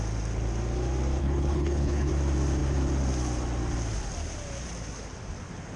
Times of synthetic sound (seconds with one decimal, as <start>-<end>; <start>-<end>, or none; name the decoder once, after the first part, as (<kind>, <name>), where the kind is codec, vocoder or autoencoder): 1.2-2.1 (codec, HILCodec)